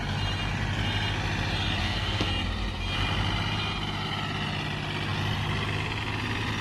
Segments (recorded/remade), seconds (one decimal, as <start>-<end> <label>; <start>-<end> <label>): 0.0-1.8 recorded; 1.8-2.3 remade; 2.3-6.6 recorded